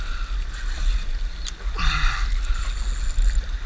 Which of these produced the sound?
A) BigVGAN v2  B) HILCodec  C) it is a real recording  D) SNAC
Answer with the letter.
C